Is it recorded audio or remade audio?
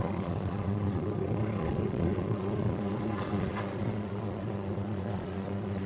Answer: remade